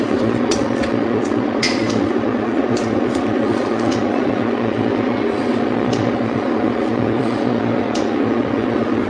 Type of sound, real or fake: fake